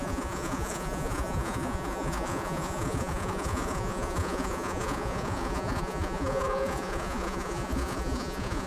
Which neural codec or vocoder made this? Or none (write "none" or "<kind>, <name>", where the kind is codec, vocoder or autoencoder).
vocoder, Vocos